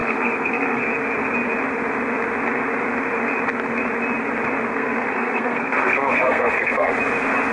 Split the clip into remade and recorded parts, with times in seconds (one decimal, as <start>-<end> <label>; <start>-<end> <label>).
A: 0.0-0.8 remade; 0.8-4.7 recorded; 4.7-6.9 remade; 6.9-7.5 recorded